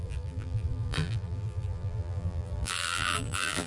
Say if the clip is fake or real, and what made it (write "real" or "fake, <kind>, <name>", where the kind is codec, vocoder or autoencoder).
fake, vocoder, BigVGAN v2